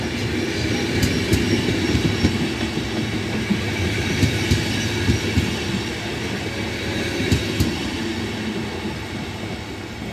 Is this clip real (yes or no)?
yes